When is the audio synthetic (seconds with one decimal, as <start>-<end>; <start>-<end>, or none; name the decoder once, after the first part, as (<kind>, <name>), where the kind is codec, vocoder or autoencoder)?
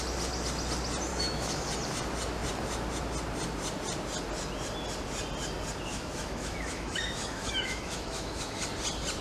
1.1-1.7 (autoencoder, DAC-VAE); 5.9-8.6